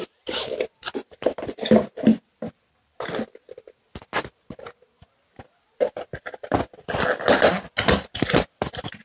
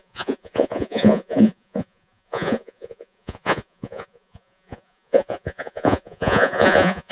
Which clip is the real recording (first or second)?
first